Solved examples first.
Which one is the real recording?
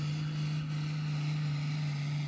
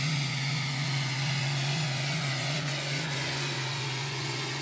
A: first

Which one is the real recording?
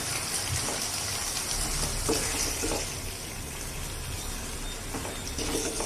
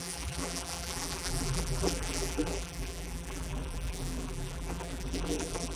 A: first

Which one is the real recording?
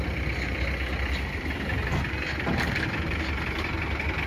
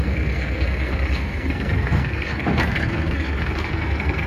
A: first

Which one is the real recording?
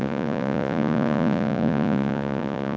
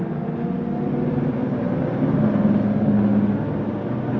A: second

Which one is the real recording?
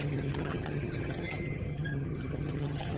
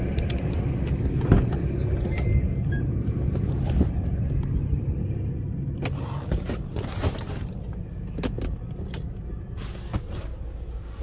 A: second